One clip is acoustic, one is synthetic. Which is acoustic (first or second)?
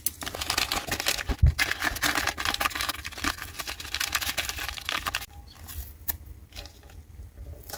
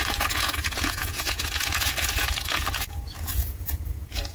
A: first